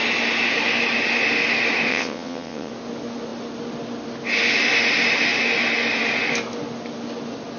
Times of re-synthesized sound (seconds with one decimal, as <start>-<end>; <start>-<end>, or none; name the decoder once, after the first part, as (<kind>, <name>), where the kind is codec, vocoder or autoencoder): 1.9-2.7 (vocoder, WaveNeXt)